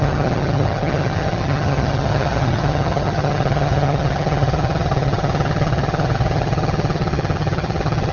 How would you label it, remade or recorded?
remade